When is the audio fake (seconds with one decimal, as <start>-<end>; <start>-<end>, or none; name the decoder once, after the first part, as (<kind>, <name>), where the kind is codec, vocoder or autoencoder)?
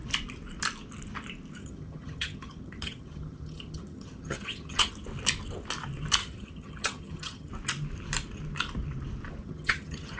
1.6-4.9 (vocoder, HiFi-GAN); 6.2-7.5; 9.4-10.2